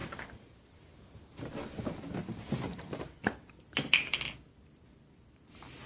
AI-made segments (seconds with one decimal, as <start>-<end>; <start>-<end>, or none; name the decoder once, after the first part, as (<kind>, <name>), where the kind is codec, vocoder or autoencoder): none